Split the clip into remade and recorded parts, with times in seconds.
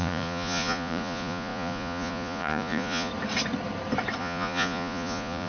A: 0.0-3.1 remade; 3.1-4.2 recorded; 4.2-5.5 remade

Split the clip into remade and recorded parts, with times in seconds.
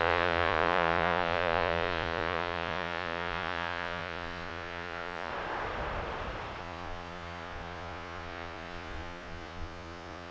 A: 0.0-5.3 remade; 5.3-6.6 recorded; 6.6-10.3 remade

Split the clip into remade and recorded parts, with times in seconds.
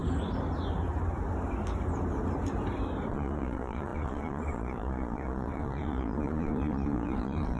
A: 0.0-3.1 recorded; 3.1-7.6 remade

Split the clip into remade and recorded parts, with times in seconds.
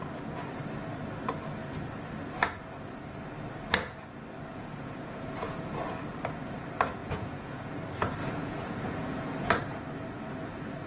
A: 0.0-4.5 recorded; 4.5-5.6 remade; 5.6-7.0 recorded; 7.0-7.7 remade; 7.7-8.2 recorded; 8.2-9.5 remade; 9.5-10.9 recorded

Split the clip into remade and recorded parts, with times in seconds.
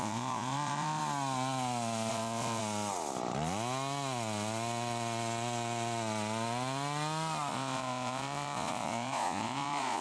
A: 0.0-1.0 remade; 1.0-2.1 recorded; 2.1-2.6 remade; 2.6-7.5 recorded; 7.5-10.0 remade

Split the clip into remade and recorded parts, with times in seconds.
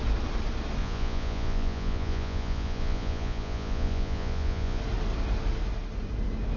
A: 0.0-0.8 recorded; 0.8-4.8 remade; 4.8-6.6 recorded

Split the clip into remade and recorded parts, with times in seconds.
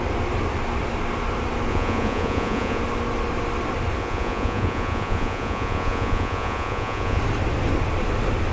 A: 0.0-1.7 recorded; 1.7-2.8 remade; 2.8-4.0 recorded; 4.0-7.2 remade; 7.2-8.5 recorded